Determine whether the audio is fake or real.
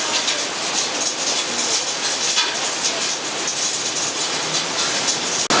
real